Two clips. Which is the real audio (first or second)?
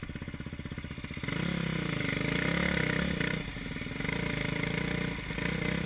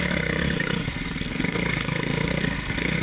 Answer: first